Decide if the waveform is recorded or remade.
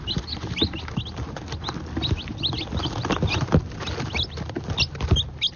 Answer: recorded